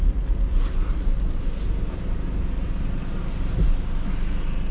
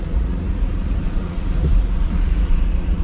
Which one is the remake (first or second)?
second